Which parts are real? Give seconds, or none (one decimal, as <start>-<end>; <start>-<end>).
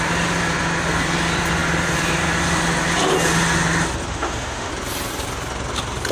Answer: 0.0-4.1; 4.7-6.1